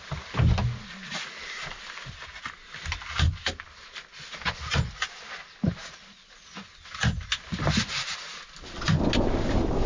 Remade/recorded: recorded